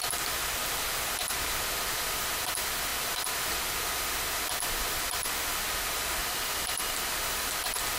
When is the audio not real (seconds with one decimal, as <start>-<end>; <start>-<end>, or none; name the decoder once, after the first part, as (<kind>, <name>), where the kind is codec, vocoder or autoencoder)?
6.2-7.1 (vocoder, BigVGAN v2)